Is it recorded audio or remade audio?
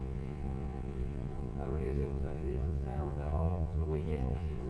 remade